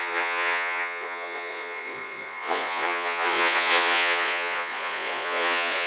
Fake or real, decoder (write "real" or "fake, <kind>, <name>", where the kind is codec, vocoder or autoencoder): fake, vocoder, Vocos